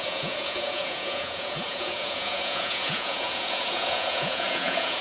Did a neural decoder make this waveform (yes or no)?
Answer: yes